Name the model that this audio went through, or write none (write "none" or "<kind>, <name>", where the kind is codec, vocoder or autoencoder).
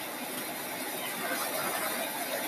none